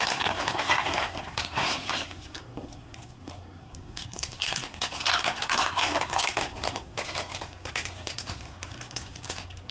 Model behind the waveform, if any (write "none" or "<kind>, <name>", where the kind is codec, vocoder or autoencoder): codec, SNAC